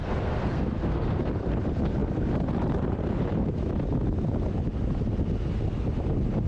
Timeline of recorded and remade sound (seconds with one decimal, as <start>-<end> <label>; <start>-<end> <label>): 0.0-1.3 remade; 1.3-6.5 recorded

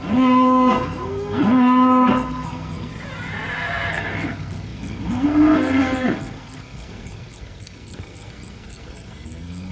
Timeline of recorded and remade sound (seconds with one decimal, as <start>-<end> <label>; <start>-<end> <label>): 0.0-2.9 remade; 2.9-3.9 recorded; 3.9-9.7 remade